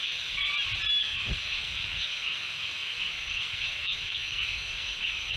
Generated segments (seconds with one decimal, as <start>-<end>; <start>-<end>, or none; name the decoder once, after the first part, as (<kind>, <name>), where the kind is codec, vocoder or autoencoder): 0.0-0.5 (codec, SNAC); 1.0-5.4